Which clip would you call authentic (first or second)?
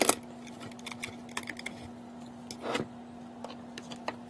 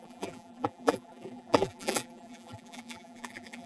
first